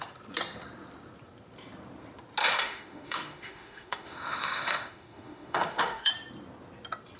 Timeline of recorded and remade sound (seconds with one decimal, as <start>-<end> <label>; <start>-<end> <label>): 0.0-2.4 recorded; 2.4-6.1 remade; 6.1-7.2 recorded